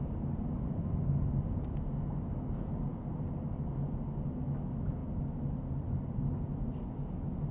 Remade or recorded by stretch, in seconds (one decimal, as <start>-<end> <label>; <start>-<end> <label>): 0.0-7.5 recorded